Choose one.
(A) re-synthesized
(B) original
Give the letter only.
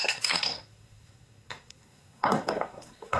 A